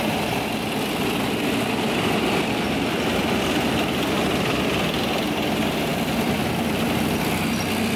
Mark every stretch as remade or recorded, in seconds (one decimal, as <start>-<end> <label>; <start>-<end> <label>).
0.0-8.0 recorded